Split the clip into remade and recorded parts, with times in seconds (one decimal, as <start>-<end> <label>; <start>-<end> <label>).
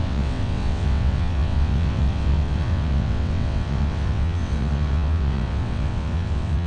0.0-6.7 remade